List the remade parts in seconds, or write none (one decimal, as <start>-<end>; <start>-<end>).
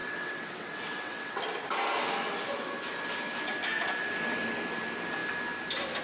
0.0-1.4